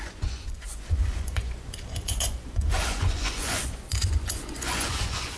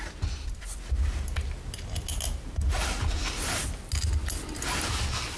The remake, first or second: first